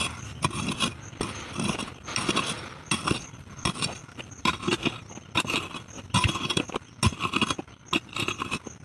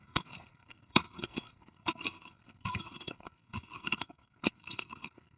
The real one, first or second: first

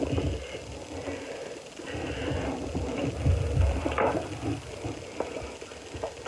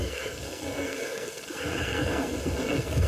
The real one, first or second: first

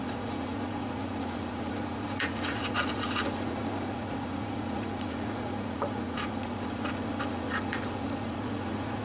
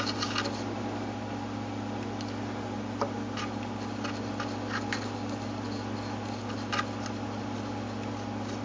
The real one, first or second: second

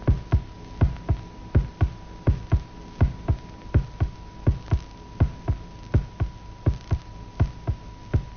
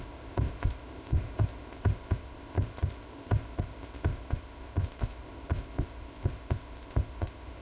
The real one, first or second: first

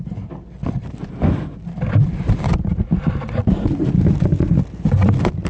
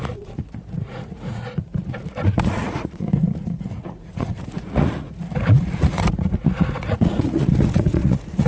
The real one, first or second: first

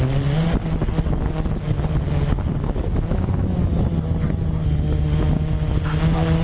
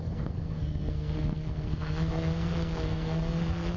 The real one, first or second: first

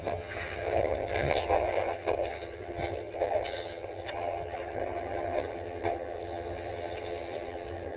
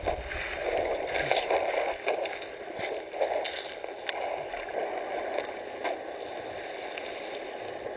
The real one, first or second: second